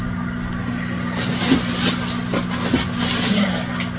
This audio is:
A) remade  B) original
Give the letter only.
B